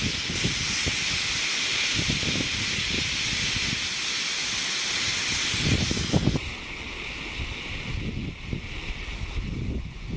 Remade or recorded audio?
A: recorded